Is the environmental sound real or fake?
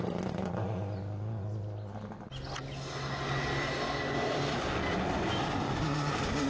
real